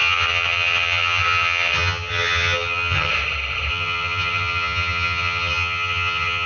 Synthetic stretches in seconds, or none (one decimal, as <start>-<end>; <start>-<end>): 0.0-3.1; 3.7-6.5